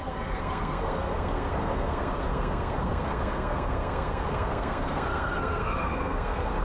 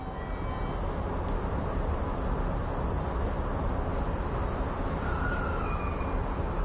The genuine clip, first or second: second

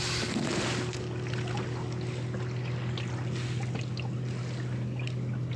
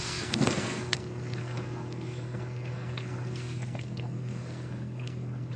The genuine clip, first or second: first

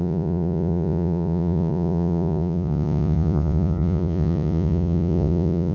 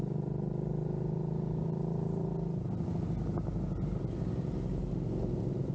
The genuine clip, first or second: second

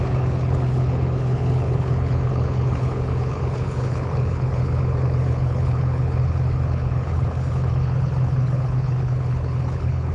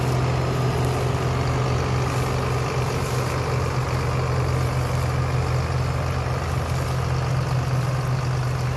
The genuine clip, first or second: second